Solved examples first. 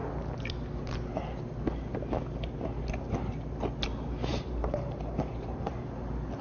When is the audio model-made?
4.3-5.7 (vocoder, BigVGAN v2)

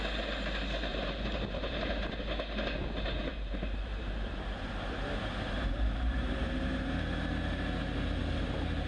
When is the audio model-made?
0.9-1.9 (vocoder, BigVGAN v2); 3.3-6.8

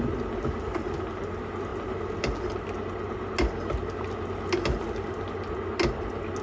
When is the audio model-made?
none

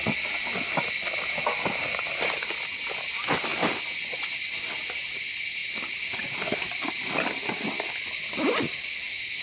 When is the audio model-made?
1.0-1.7 (vocoder, BigVGAN v2)

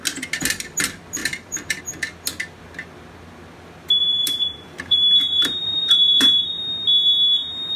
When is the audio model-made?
1.2-1.8 (vocoder, BigVGAN v2); 4.0-6.6

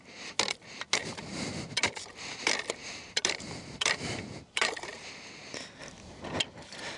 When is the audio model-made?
1.0-2.1 (vocoder, BigVGAN v2); 2.8-5.1; 5.8-6.4